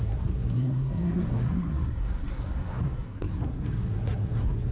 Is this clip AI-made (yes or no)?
yes